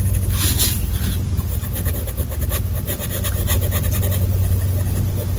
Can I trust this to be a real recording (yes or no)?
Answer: yes